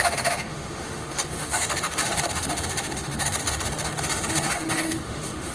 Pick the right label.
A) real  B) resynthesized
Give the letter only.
B